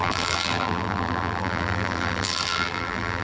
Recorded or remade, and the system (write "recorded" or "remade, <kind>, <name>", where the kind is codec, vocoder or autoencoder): remade, vocoder, BigVGAN v2